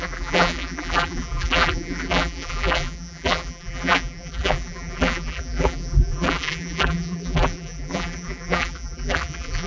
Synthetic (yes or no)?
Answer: yes